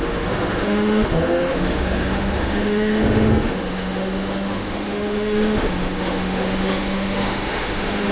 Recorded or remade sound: remade